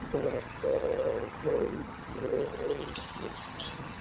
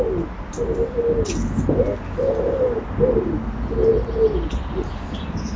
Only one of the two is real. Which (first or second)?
second